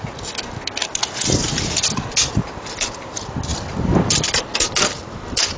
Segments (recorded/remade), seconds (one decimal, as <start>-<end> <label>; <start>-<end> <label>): 0.0-5.6 recorded